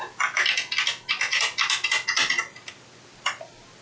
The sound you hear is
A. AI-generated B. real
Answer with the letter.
B